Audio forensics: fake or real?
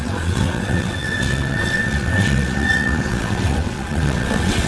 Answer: fake